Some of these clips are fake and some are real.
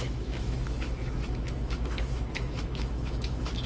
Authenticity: fake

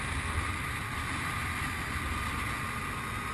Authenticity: real